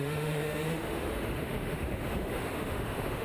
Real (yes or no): no